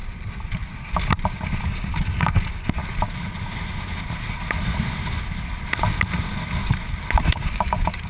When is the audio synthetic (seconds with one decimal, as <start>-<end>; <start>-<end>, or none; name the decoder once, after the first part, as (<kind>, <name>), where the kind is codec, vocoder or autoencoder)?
1.6-2.8 (codec, DAC); 7.2-8.1